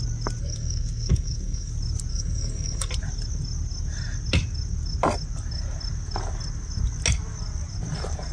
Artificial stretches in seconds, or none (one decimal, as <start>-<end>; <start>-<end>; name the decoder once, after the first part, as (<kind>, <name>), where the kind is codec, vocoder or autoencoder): 0.4-1.7 (codec, SNAC); 2.1-2.9